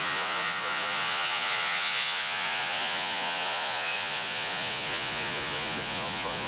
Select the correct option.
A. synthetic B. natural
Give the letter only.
A